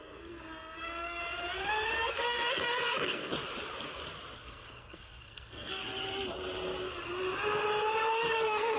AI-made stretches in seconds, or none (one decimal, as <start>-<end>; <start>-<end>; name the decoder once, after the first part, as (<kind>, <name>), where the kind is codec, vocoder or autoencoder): 0.0-1.2 (codec, SNAC); 1.9-3.3; 4.4-5.8; 8.3-8.8